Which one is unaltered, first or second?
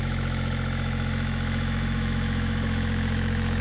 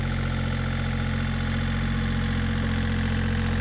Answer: second